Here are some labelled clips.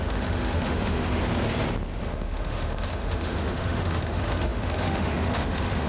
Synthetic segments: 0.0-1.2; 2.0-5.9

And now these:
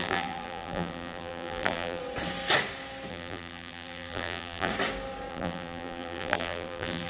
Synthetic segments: 0.0-2.0; 3.1-4.7; 5.3-7.1

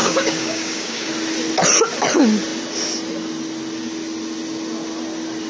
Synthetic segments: 0.0-1.1

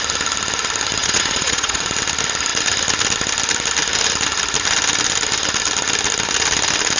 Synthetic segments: 1.0-1.9

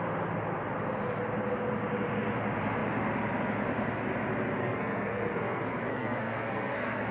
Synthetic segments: 4.6-7.1

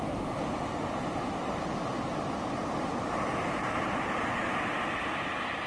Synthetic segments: none

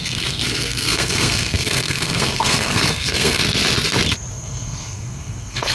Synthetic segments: 0.0-3.4; 4.3-5.7

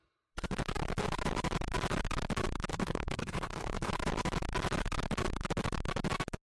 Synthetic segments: 2.7-3.9